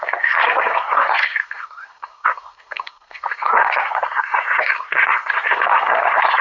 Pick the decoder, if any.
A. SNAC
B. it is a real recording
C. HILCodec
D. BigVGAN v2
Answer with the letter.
A